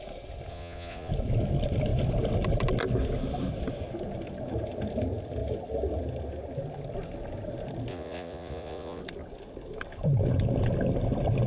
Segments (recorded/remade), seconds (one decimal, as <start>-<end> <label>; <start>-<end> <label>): 0.0-0.5 recorded; 0.5-1.1 remade; 1.1-7.9 recorded; 7.9-9.0 remade; 9.0-11.5 recorded